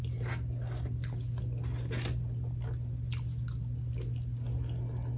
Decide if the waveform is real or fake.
real